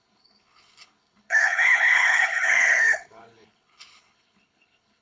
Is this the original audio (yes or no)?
no